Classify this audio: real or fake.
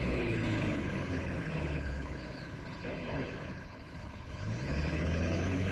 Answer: fake